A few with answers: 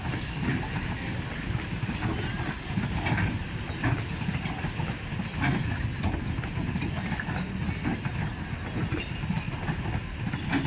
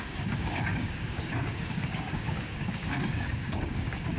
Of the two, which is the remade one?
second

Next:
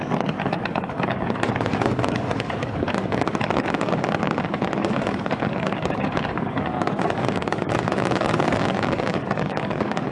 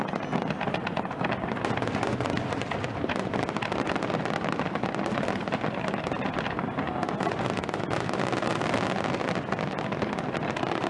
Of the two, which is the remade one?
first